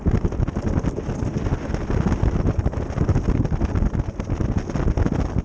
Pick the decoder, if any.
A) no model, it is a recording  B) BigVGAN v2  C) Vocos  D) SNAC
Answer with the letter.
A